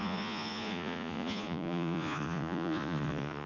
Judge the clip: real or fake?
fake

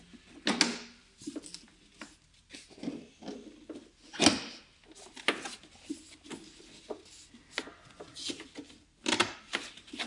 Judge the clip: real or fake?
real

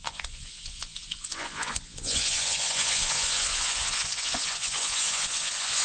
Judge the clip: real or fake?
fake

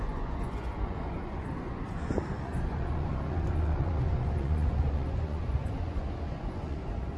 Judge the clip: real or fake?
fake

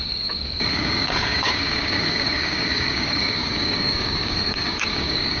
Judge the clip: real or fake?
fake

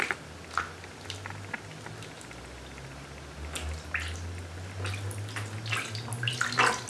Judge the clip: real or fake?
real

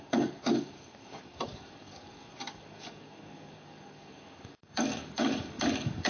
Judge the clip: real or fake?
fake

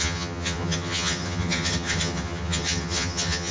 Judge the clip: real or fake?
fake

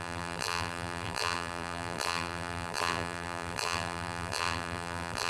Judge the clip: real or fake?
fake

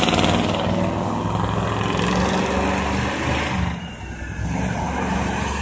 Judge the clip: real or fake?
real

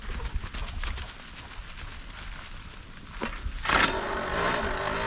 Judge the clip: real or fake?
real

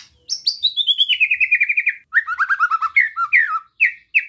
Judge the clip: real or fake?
real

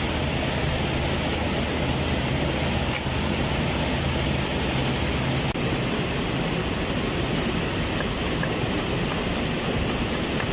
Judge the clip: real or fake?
real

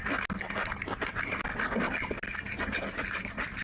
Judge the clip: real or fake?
real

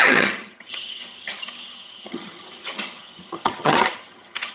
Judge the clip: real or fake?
fake